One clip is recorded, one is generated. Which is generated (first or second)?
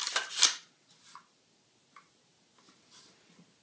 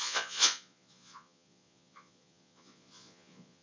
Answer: second